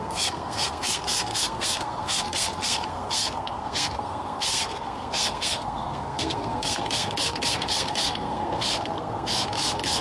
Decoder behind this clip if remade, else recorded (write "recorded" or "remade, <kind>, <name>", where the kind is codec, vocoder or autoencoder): remade, codec, SNAC